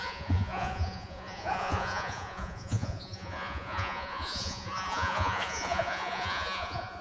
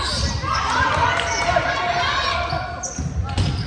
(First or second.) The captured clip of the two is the second